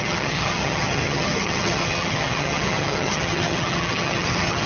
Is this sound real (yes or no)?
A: no